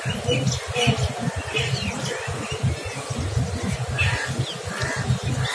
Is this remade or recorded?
recorded